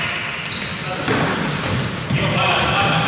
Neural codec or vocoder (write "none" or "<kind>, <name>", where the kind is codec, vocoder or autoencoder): none